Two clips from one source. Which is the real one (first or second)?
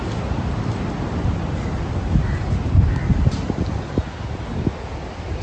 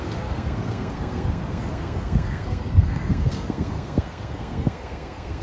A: first